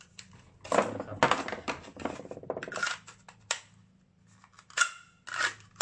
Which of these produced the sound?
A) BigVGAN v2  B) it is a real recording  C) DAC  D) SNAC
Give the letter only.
B